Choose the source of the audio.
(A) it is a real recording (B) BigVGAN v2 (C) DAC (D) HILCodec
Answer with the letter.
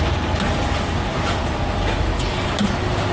A